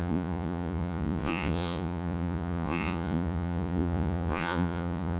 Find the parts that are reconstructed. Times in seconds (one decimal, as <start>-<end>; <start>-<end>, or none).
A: 0.0-5.2